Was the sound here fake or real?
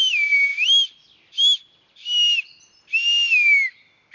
real